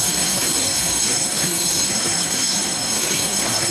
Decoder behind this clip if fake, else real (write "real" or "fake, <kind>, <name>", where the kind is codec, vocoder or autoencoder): fake, codec, SNAC